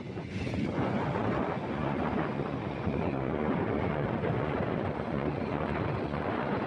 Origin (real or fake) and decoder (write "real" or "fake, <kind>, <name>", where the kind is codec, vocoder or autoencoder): fake, vocoder, Vocos